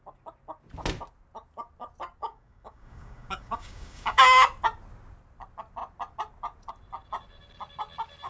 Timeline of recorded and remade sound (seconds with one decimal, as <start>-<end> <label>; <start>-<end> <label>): 0.0-2.2 recorded; 2.2-4.2 remade; 4.2-8.3 recorded